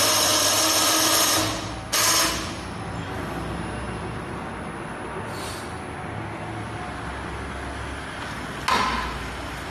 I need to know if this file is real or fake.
real